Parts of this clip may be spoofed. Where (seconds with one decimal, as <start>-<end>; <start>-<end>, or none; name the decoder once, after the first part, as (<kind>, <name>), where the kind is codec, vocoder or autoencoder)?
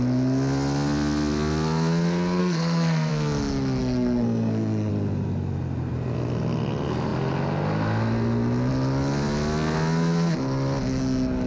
2.4-3.1 (codec, SNAC); 3.8-4.9